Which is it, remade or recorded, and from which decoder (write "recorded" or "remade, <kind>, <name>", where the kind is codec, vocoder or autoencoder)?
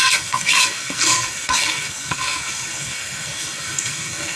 remade, codec, SNAC